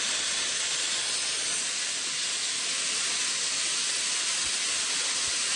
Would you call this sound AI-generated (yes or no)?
no